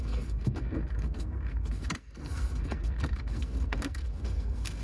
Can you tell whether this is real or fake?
fake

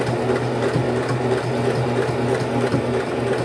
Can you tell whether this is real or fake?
real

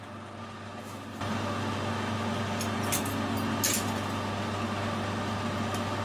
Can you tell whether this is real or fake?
real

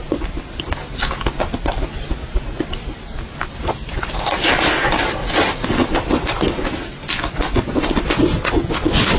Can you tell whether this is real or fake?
real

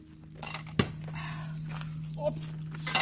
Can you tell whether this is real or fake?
real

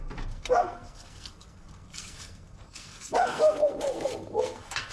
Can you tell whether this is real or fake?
fake